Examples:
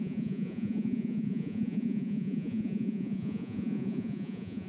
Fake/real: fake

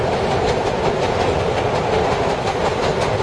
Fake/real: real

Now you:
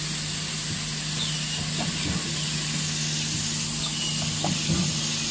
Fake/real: real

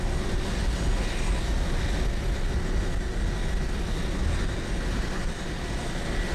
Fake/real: real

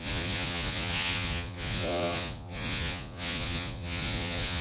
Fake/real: fake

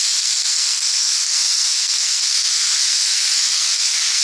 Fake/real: fake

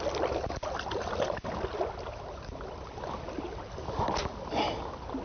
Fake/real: real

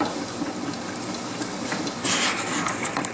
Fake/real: real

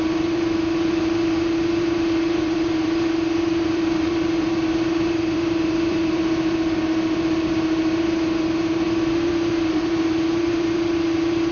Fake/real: fake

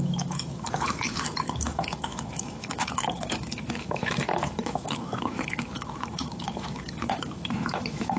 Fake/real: fake